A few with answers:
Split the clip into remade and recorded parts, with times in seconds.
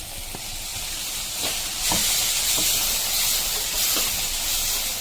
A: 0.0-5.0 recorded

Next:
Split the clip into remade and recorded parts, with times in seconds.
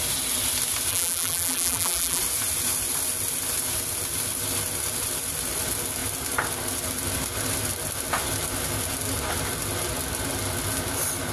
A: 0.0-0.9 recorded; 0.9-2.2 remade; 2.2-11.3 recorded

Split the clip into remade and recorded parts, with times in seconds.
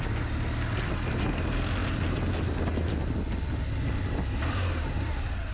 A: 0.0-5.5 recorded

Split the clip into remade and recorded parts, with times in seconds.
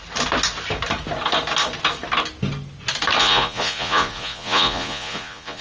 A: 0.0-3.2 recorded; 3.2-5.6 remade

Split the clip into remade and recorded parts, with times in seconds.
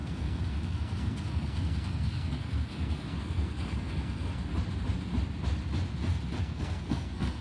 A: 0.0-4.5 remade; 4.5-6.4 recorded; 6.4-7.4 remade